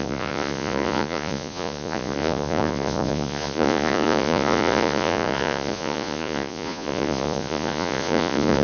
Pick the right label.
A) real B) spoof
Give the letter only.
B